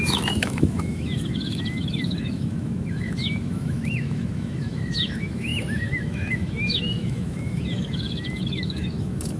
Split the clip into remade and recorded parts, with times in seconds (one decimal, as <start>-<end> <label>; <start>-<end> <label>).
0.0-9.4 remade